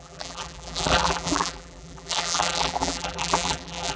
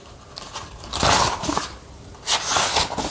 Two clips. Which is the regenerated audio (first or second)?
first